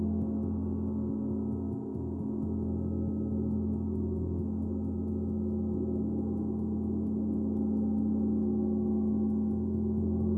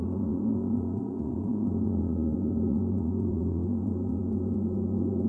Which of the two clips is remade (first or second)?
second